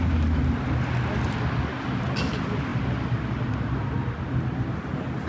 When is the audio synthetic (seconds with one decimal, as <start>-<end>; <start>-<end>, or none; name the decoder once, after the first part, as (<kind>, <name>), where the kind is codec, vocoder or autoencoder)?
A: none